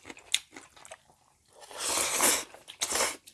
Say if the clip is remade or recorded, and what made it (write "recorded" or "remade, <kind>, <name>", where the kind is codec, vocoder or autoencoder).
recorded